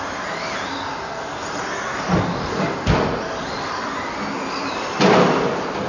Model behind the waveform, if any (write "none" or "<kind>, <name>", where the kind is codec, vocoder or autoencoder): none